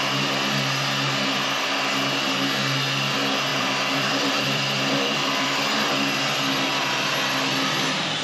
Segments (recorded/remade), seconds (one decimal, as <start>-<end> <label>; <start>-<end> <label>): 0.0-3.5 recorded; 3.5-5.6 remade; 5.6-8.2 recorded